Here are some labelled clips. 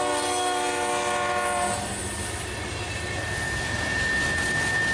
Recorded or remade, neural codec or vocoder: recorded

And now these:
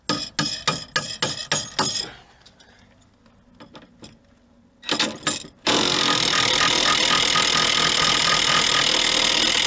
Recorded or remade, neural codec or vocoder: recorded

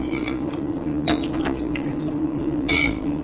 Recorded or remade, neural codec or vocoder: remade, vocoder, Vocos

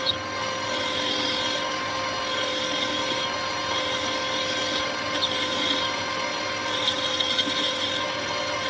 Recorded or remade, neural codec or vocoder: recorded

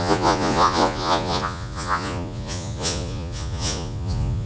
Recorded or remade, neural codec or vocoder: remade, vocoder, Vocos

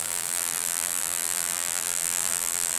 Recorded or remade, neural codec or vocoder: remade, vocoder, BigVGAN v2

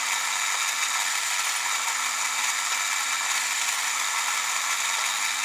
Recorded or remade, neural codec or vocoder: recorded